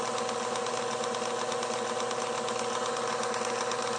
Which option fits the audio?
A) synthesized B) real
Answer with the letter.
B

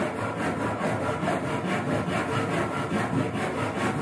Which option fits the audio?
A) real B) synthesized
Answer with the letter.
A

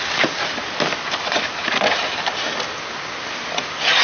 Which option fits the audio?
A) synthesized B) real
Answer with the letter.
B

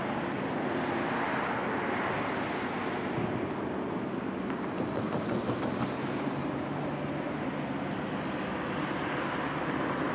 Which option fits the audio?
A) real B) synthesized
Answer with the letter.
A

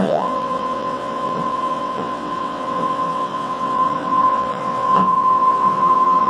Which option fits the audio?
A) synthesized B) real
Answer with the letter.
A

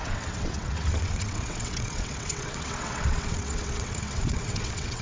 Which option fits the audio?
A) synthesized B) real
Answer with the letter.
A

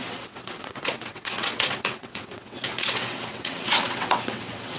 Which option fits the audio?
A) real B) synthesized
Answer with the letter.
B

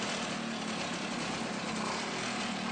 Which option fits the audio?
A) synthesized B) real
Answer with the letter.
B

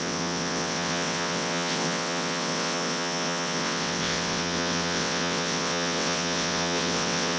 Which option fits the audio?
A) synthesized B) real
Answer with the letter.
A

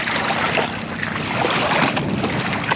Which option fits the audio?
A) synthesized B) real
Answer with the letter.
B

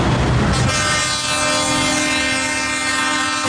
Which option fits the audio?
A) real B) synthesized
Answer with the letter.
A